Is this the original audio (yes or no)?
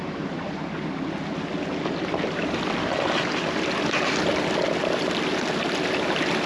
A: yes